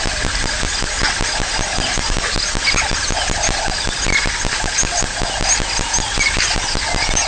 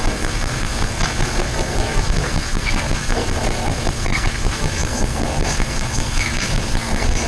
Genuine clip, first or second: first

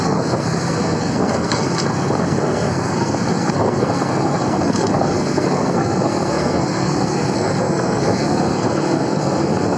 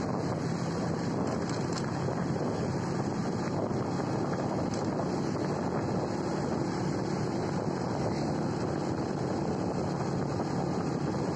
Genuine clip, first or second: second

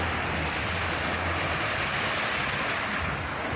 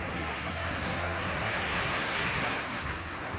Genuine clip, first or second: first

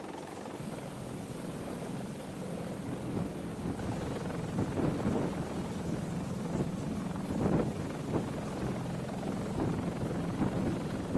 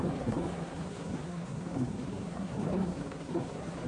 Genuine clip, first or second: first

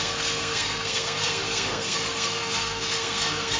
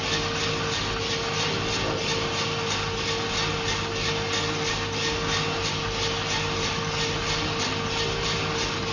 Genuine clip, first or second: second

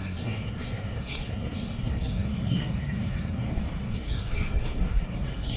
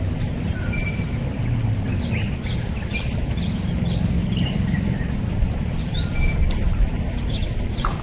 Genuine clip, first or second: second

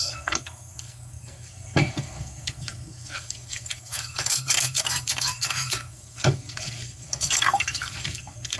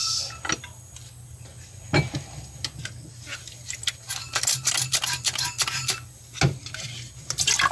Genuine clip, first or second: second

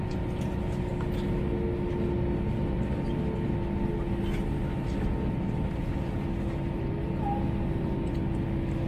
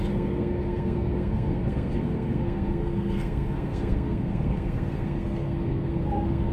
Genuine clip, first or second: first